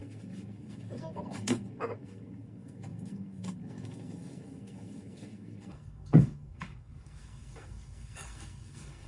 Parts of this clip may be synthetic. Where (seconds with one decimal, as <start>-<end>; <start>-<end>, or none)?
0.0-9.1

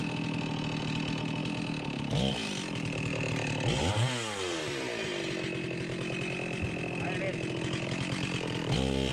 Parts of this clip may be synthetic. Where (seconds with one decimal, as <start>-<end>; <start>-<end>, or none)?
none